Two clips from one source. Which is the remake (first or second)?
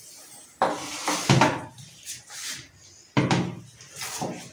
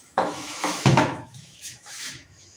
second